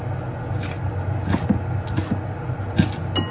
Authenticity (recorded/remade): recorded